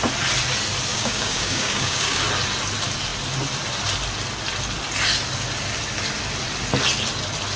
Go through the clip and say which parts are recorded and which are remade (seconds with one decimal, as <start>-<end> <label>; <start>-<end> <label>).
0.0-0.9 recorded; 0.9-2.2 remade; 2.2-7.6 recorded